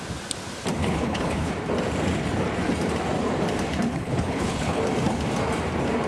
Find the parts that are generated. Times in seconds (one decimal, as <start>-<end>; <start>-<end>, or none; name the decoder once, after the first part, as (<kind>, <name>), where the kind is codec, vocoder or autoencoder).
0.8-1.5 (codec, HILCodec); 3.9-4.8